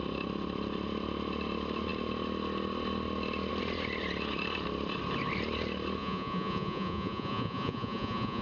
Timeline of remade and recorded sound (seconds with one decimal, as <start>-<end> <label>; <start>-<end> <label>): 0.0-6.0 recorded; 6.0-8.4 remade